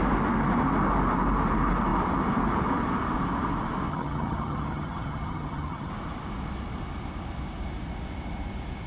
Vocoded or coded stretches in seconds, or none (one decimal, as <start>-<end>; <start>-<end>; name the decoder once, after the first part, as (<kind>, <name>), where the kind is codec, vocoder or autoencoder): 3.9-5.9 (vocoder, HiFi-GAN)